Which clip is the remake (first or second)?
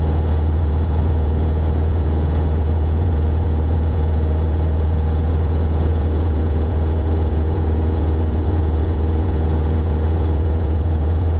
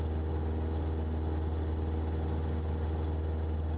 first